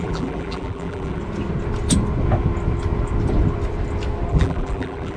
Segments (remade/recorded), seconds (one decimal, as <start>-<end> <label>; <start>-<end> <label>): 0.0-1.2 remade; 1.2-4.3 recorded; 4.3-5.2 remade